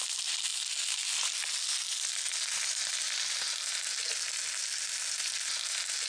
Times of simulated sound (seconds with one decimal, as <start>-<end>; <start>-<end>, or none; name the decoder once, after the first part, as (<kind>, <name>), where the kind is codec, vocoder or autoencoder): none

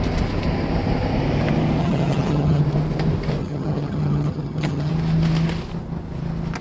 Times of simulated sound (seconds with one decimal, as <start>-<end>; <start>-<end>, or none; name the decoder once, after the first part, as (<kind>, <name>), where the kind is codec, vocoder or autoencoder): 1.8-2.6 (vocoder, HiFi-GAN); 3.4-4.9

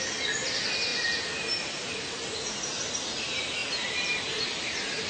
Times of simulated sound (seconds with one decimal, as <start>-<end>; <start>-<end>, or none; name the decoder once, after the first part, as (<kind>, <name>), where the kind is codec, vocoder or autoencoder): 0.9-2.9 (vocoder, BigVGAN v2); 3.6-5.1

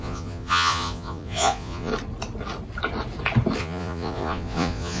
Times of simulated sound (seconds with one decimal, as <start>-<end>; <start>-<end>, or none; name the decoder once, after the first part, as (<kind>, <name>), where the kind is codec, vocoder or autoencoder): 0.0-1.9 (vocoder, Vocos); 3.6-5.0

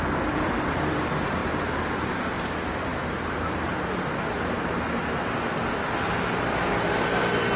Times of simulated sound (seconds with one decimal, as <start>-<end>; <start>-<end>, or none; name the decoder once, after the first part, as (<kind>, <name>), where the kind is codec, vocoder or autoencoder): 0.0-1.4 (vocoder, BigVGAN v2); 1.9-2.9; 6.1-7.6

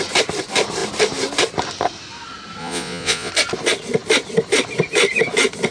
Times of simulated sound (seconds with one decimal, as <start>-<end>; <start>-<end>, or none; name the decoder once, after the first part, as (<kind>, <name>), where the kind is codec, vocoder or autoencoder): 2.6-3.3 (vocoder, Vocos)

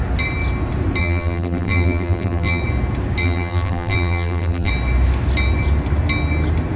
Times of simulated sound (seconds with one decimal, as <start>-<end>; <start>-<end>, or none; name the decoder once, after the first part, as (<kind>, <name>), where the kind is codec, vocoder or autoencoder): 1.0-2.6 (vocoder, BigVGAN v2); 3.2-4.7